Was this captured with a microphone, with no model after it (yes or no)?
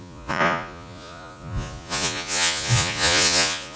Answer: no